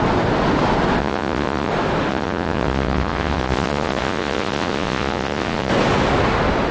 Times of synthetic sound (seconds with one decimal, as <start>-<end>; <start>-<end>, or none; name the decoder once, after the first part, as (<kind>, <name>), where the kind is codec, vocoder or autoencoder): 1.0-1.7 (vocoder, Vocos); 2.1-5.7